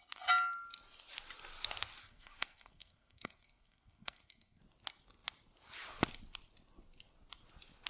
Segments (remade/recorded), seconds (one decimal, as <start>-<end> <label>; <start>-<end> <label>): 0.0-2.0 recorded; 2.0-4.6 remade; 4.6-7.9 recorded